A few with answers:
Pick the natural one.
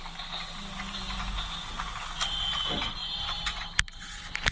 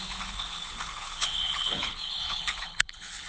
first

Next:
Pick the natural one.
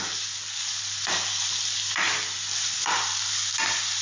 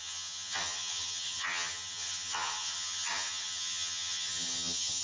first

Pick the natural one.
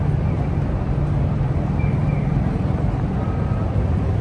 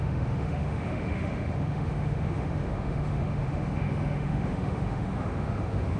first